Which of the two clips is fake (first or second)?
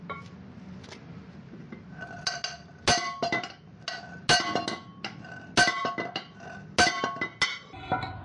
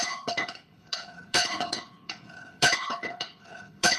second